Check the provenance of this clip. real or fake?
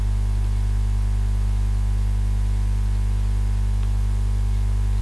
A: real